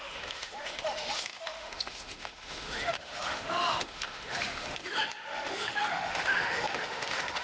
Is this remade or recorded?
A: remade